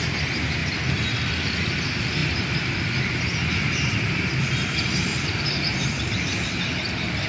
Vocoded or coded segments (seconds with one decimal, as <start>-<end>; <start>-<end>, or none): 2.2-3.0; 5.1-6.1